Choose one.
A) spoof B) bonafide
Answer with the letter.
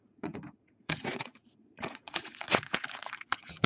A